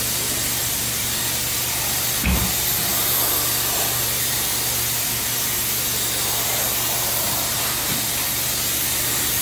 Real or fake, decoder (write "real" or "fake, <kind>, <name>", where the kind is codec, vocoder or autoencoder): real